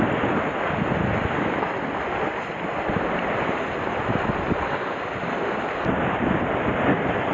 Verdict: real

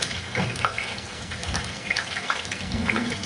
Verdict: fake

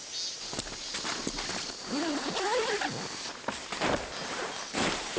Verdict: real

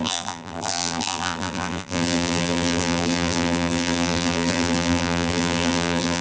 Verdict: fake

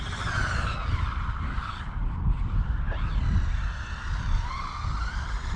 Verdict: real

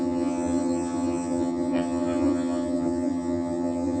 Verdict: fake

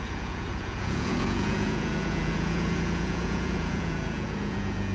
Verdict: fake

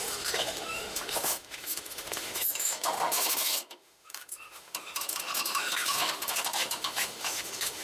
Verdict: fake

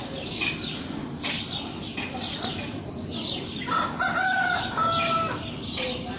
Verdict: real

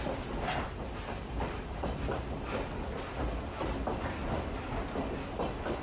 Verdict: real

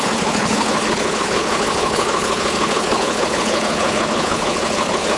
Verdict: fake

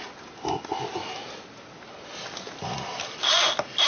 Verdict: real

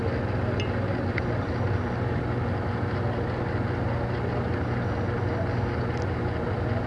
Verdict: real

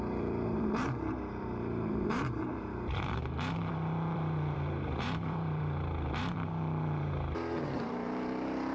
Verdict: fake